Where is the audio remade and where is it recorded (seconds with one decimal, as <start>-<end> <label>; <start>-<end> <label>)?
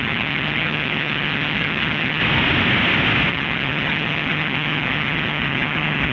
0.0-2.2 remade; 2.2-3.3 recorded; 3.3-6.1 remade